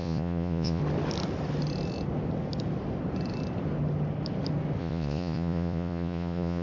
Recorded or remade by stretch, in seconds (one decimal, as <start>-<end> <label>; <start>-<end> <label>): 0.0-0.8 remade; 0.8-4.8 recorded; 4.8-6.6 remade